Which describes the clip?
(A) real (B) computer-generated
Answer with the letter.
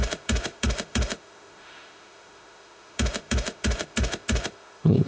B